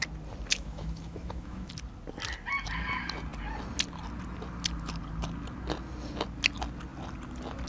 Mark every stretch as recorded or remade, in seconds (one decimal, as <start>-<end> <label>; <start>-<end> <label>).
0.0-0.5 recorded; 0.5-1.7 remade; 1.7-7.7 recorded